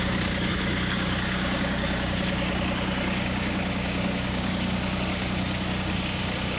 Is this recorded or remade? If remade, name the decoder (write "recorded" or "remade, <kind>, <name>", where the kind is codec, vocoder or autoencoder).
remade, codec, DAC